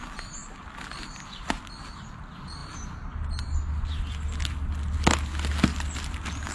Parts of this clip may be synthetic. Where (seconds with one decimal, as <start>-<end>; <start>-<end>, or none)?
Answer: none